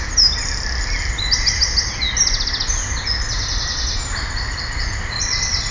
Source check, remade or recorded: recorded